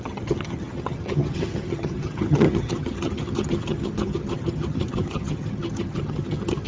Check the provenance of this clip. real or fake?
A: fake